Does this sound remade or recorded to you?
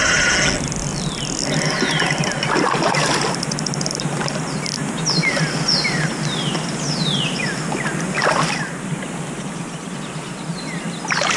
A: recorded